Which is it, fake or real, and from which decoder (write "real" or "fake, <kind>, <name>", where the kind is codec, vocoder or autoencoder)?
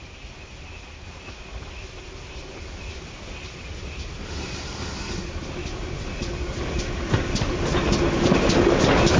real